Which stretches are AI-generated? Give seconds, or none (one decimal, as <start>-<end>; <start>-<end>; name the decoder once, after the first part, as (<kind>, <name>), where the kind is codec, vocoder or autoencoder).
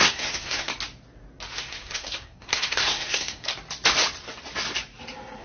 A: 0.0-0.7 (codec, SNAC); 1.7-3.5